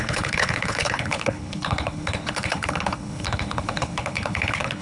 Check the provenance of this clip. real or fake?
fake